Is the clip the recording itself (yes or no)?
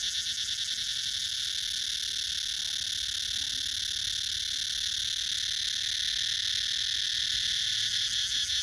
yes